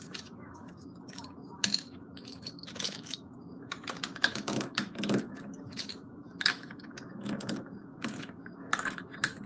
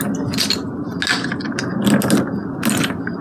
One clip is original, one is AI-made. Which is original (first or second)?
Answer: second